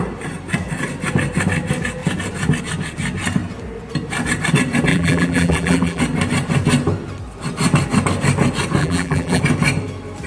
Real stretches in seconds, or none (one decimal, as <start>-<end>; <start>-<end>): 0.0-4.9; 6.0-8.8; 9.4-10.3